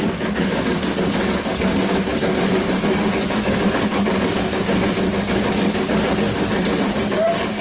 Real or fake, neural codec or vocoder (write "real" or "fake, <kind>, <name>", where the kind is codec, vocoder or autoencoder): fake, codec, DAC